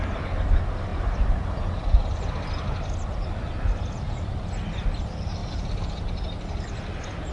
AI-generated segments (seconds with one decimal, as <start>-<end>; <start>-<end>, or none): none

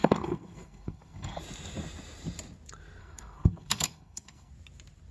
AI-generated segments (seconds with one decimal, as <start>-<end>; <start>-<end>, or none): 0.0-1.4; 3.0-4.5